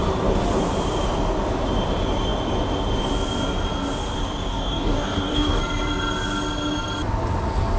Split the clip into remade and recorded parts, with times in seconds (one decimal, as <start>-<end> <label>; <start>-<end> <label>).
0.0-4.5 recorded; 4.5-5.6 remade; 5.6-7.8 recorded

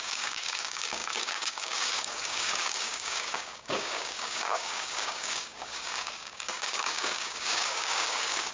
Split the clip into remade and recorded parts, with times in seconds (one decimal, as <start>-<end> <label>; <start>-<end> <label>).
0.0-8.5 remade

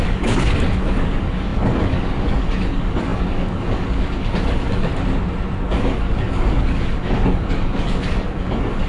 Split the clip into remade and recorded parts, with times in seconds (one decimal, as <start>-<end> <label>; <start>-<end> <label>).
0.0-4.9 remade; 4.9-5.7 recorded; 5.7-8.9 remade

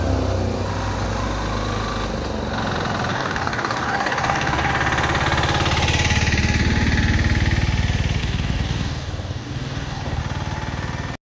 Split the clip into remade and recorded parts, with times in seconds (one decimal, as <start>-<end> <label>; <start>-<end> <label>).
0.0-3.1 recorded; 3.1-4.7 remade; 4.7-8.2 recorded; 8.2-10.2 remade; 10.2-11.4 recorded